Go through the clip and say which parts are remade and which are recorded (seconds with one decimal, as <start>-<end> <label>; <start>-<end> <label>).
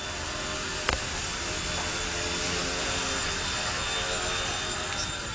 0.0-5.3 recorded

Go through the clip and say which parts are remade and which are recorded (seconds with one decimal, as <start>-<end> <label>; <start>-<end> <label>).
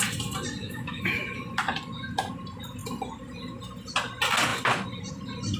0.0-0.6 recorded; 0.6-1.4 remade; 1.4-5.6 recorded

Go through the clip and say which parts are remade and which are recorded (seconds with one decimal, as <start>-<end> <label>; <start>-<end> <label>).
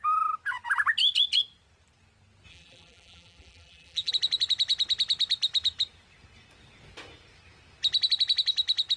0.0-2.5 recorded; 2.5-4.1 remade; 4.1-9.0 recorded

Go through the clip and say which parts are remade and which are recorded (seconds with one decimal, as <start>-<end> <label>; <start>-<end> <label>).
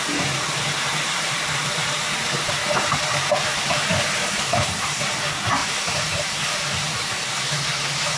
0.0-0.9 recorded; 0.9-5.0 remade; 5.0-5.6 recorded; 5.6-7.5 remade; 7.5-8.2 recorded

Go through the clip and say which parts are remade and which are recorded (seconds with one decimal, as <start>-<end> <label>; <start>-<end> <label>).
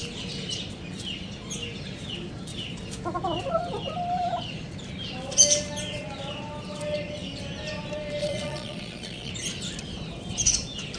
0.0-8.2 recorded; 8.2-9.3 remade; 9.3-11.0 recorded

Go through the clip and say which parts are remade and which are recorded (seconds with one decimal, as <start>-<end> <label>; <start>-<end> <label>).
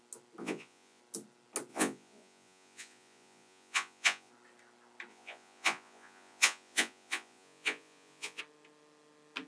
0.0-0.4 recorded; 0.4-1.0 remade; 1.0-1.7 recorded; 1.7-4.3 remade; 4.3-5.1 recorded; 5.1-8.4 remade; 8.4-9.5 recorded